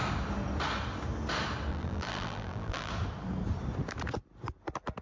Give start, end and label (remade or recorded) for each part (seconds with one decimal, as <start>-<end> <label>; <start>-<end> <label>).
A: 0.0-1.7 recorded; 1.7-2.9 remade; 2.9-5.0 recorded

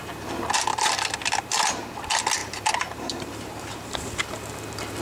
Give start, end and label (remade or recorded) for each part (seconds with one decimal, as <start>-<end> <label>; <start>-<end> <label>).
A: 0.0-0.7 recorded; 0.7-1.2 remade; 1.2-2.4 recorded; 2.4-4.3 remade; 4.3-5.0 recorded

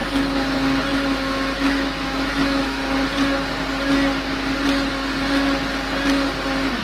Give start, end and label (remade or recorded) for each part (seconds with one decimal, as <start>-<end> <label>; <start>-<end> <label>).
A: 0.0-1.6 recorded; 1.6-2.8 remade; 2.8-6.8 recorded

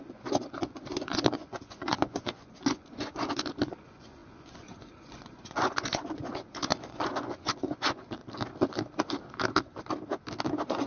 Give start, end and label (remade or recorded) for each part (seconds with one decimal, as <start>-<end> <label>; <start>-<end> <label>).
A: 0.0-8.2 remade; 8.2-10.5 recorded; 10.5-10.9 remade

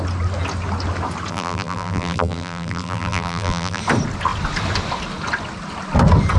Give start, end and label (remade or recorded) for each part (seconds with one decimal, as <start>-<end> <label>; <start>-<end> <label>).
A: 0.0-1.3 recorded; 1.3-3.8 remade; 3.8-6.4 recorded

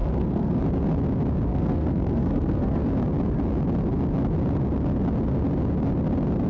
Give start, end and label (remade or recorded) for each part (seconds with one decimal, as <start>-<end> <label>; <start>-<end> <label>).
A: 0.0-0.6 remade; 0.6-1.5 recorded; 1.5-2.8 remade; 2.8-6.5 recorded

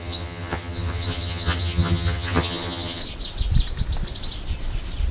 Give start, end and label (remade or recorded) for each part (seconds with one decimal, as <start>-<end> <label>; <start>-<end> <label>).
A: 0.0-3.0 remade; 3.0-5.1 recorded

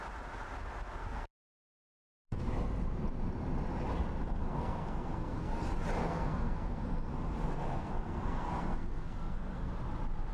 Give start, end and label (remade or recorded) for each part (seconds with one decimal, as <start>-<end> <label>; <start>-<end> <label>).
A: 0.0-1.0 recorded; 1.0-2.5 remade; 2.5-4.4 recorded; 4.4-5.6 remade; 5.6-6.0 recorded; 6.0-9.7 remade; 9.7-10.3 recorded